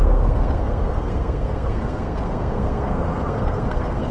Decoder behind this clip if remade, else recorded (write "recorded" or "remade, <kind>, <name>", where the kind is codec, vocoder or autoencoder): remade, codec, SNAC